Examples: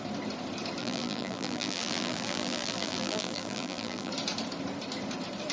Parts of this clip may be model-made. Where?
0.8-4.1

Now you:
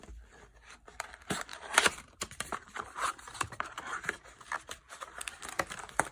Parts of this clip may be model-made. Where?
1.5-5.2

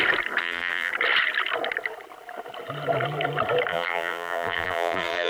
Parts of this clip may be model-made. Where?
0.4-0.9; 3.7-5.3

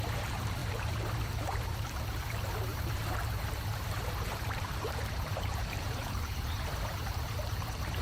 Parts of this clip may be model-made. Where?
0.0-8.0

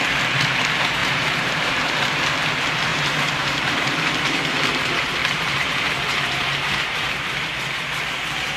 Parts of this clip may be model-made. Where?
1.0-1.9; 2.9-4.1; 5.2-7.2